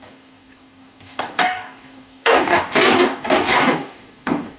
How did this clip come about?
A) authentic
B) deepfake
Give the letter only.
B